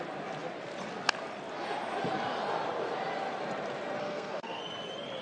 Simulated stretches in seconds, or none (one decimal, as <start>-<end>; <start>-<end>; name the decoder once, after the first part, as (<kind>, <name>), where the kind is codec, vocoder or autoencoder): 4.0-4.6 (codec, SNAC)